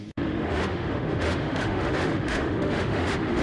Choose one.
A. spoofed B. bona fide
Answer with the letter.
A